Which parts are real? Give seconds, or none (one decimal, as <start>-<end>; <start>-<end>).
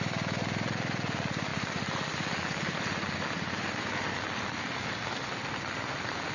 0.0-6.3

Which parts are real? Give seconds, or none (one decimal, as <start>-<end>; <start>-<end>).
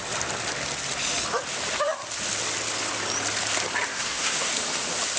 0.0-3.9; 4.5-5.2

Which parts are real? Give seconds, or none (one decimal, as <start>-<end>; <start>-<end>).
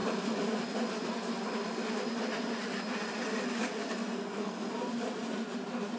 0.0-3.8; 4.7-6.0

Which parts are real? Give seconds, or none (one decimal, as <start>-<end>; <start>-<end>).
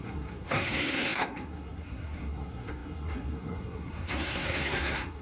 none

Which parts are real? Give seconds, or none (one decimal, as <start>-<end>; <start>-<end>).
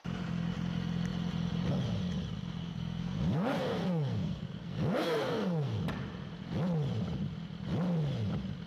0.0-2.6; 5.8-8.7